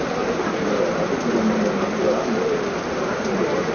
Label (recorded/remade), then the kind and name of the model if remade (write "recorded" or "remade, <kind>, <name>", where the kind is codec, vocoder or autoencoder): remade, vocoder, BigVGAN v2